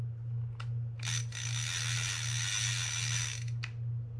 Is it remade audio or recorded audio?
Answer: recorded